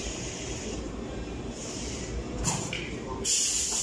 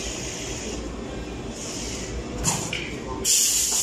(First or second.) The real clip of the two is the second